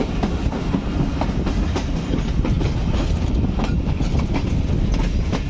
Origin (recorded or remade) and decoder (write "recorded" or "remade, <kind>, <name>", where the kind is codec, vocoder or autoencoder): recorded